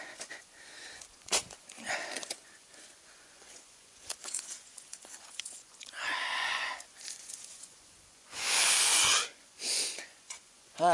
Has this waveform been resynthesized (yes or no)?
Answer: yes